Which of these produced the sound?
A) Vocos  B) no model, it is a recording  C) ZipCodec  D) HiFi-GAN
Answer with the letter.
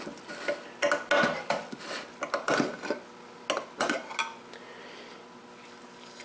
B